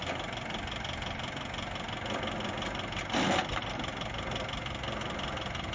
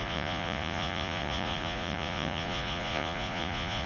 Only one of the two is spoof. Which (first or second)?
second